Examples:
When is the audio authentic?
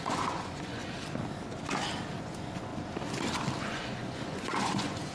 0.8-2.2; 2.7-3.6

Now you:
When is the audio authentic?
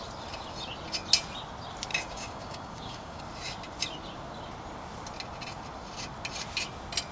0.0-1.9; 3.2-7.1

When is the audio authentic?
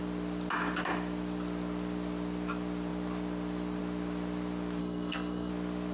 0.0-4.8; 5.5-5.9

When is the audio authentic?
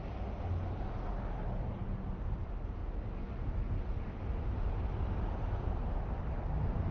0.0-6.9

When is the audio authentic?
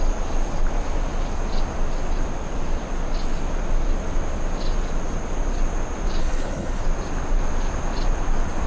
0.0-6.2; 6.8-8.7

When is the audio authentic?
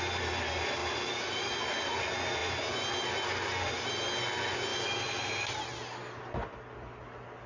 0.0-0.8; 1.9-4.7; 5.6-7.5